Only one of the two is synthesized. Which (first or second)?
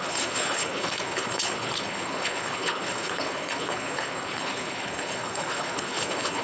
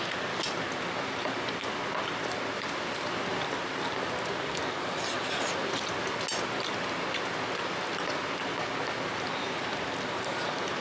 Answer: first